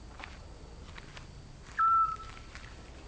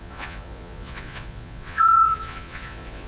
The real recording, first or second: first